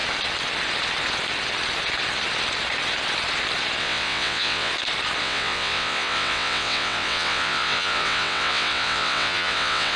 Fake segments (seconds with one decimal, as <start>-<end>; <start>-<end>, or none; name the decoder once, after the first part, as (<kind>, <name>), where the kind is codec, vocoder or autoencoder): 3.8-4.7 (vocoder, WaveNeXt); 5.2-10.0